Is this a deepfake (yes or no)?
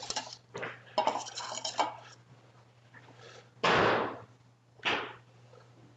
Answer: no